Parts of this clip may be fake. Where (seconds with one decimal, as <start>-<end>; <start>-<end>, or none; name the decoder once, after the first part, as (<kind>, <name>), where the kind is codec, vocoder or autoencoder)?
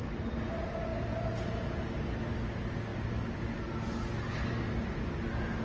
none